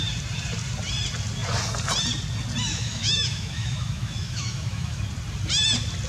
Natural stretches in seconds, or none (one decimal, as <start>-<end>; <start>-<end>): 0.0-2.7; 5.0-6.1